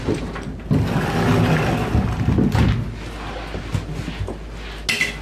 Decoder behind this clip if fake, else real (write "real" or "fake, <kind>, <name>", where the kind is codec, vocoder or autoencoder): real